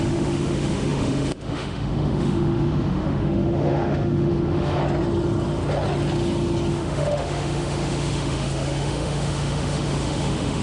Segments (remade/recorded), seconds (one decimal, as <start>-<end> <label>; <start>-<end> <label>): 0.0-4.8 remade; 4.8-6.7 recorded; 6.7-10.6 remade